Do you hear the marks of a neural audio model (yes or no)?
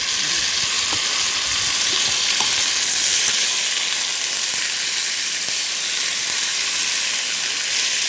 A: no